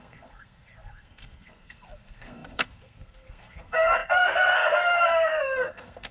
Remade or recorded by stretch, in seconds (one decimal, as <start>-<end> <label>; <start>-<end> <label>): 0.0-6.1 remade